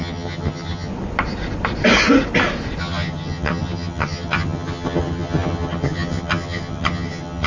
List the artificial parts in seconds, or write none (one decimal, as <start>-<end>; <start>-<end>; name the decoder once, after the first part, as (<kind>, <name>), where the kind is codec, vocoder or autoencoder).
0.0-0.9 (vocoder, HiFi-GAN); 2.8-7.5